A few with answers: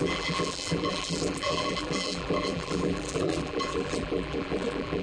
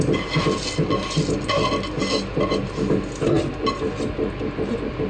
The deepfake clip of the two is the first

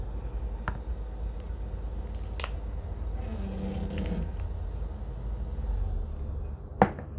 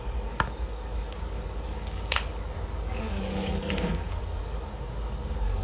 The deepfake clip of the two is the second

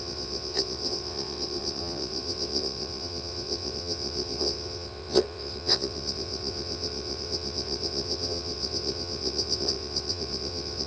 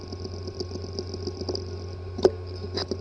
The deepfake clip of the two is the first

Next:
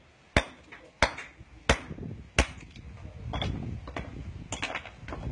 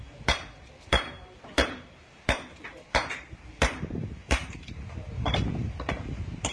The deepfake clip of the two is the second